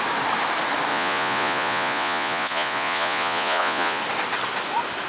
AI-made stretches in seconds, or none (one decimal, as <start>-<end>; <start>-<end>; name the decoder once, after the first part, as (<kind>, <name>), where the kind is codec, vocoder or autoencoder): 0.9-4.0 (vocoder, Vocos)